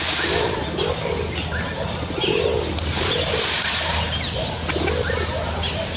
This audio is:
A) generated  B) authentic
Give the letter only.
B